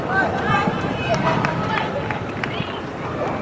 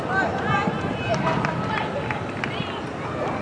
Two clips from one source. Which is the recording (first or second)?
second